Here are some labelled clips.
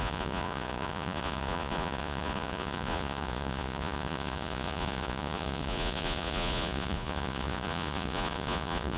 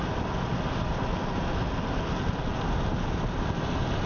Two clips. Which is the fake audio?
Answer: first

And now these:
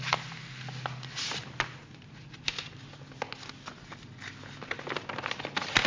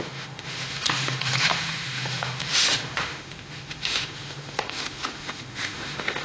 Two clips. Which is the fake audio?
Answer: second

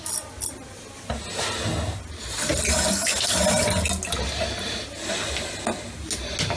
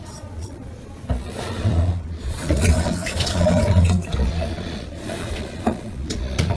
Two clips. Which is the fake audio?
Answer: second